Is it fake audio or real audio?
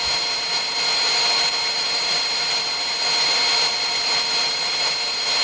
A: real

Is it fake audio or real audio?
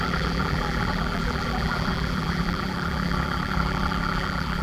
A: fake